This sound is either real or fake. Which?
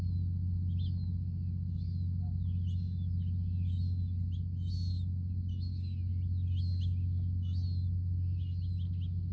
real